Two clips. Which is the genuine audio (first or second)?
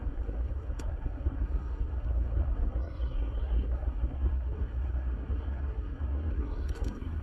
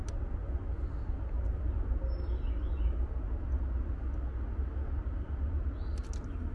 second